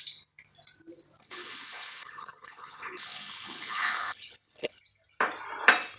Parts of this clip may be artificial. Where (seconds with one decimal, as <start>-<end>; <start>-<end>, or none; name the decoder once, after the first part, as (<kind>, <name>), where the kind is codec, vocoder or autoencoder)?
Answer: 1.2-4.8 (codec, HILCodec)